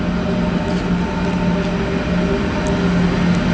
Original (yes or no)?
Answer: yes